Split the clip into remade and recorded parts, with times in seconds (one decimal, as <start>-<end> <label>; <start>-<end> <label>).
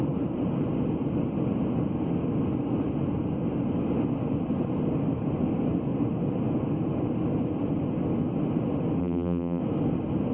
0.0-9.0 recorded; 9.0-9.6 remade; 9.6-10.3 recorded